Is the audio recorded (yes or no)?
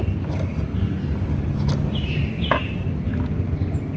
yes